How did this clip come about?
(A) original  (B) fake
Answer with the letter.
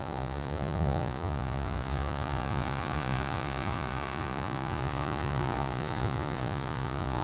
B